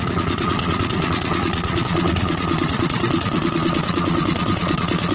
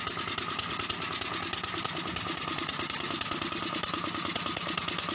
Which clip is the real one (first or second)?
second